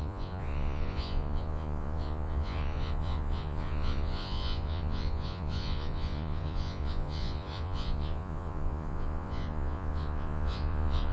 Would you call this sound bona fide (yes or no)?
no